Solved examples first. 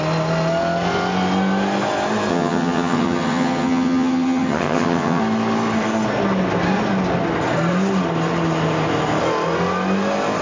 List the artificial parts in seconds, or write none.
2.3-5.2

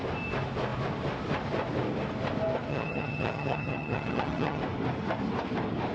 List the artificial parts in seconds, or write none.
2.7-4.6

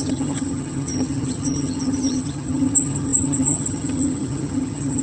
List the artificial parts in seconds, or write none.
0.0-5.0

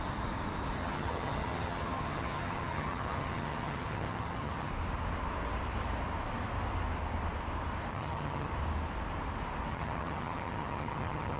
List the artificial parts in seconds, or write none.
0.8-4.7; 7.9-8.5; 9.7-11.4

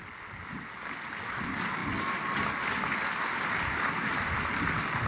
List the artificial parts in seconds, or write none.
none